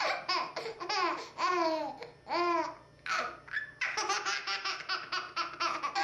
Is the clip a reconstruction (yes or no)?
no